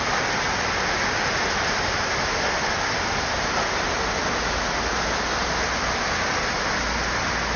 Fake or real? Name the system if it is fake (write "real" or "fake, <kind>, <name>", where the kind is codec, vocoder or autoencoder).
real